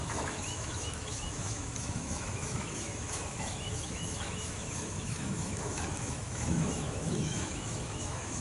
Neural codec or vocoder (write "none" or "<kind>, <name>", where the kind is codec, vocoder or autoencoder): autoencoder, DAC-VAE